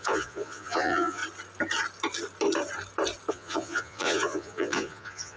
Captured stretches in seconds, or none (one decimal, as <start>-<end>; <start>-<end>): 1.2-3.3